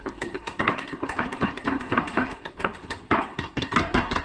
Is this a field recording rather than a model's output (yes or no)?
no